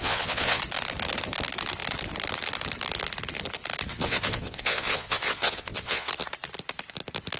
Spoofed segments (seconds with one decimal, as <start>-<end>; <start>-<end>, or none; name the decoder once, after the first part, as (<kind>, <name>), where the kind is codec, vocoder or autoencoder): 0.0-0.6 (vocoder, Vocos); 3.9-6.1